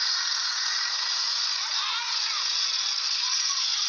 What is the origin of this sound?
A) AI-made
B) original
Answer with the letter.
A